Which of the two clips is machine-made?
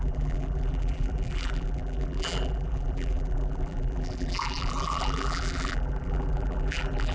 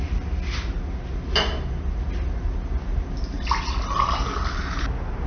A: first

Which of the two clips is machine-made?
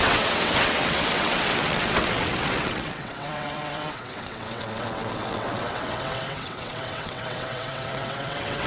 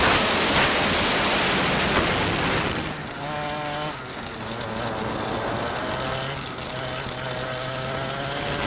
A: first